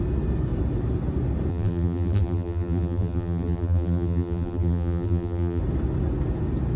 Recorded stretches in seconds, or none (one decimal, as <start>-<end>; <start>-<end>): 0.0-1.5; 5.6-6.8